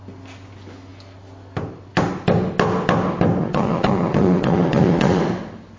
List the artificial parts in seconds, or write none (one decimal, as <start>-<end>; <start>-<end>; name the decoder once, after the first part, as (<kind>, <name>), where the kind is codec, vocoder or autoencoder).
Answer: 3.4-5.2 (vocoder, Vocos)

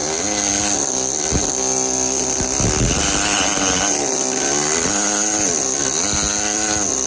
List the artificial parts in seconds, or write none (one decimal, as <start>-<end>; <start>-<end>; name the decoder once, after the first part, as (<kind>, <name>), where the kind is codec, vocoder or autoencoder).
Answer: none

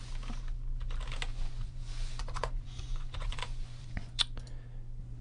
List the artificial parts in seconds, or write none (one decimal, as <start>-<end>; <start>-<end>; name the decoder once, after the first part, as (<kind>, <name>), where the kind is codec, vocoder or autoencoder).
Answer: 1.3-4.2 (vocoder, Vocos)